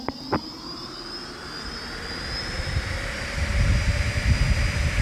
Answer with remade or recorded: recorded